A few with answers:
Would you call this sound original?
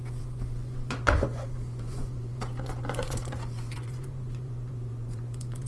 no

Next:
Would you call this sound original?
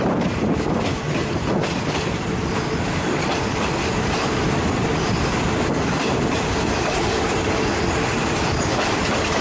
yes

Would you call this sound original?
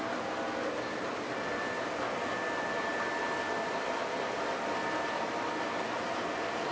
yes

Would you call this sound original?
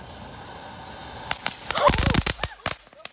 yes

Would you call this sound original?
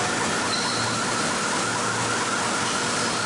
yes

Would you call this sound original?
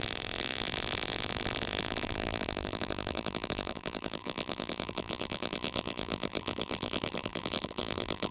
no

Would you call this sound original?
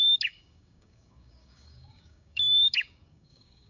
no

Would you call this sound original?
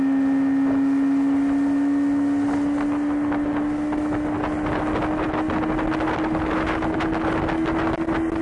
yes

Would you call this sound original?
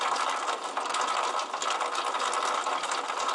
yes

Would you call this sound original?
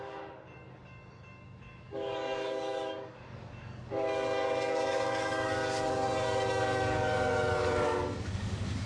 no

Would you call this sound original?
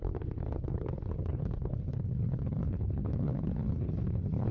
no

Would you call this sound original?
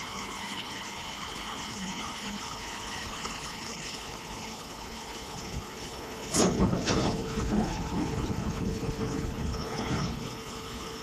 no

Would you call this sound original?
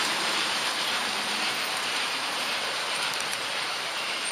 no